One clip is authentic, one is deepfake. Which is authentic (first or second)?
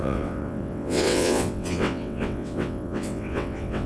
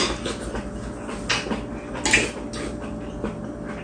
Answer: second